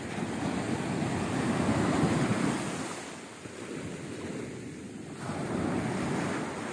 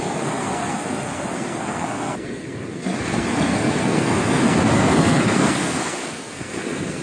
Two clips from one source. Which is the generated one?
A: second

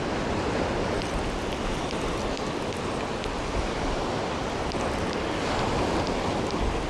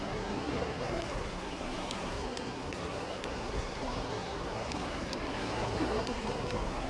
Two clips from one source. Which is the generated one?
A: second